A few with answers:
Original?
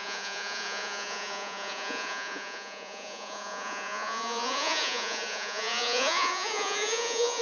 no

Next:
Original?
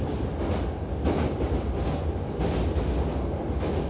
yes